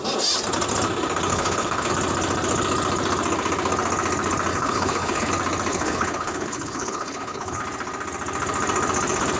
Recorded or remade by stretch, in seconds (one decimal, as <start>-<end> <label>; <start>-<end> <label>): 0.0-1.3 recorded; 1.3-1.9 remade; 1.9-4.5 recorded; 4.5-5.3 remade; 5.3-5.7 recorded; 5.7-7.6 remade; 7.6-9.4 recorded